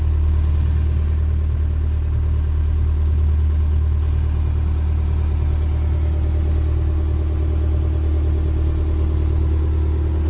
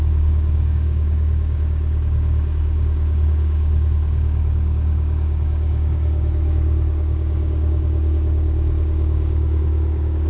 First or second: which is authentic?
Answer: first